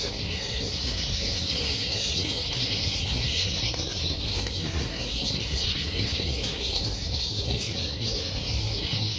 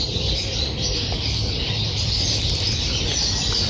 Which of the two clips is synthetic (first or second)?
first